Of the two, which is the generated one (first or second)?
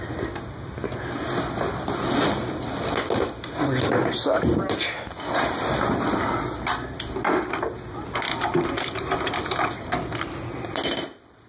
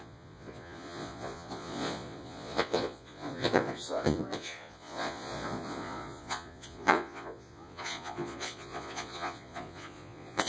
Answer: second